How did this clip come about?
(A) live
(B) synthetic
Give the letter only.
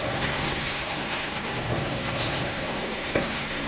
B